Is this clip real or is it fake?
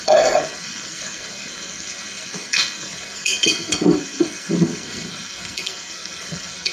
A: fake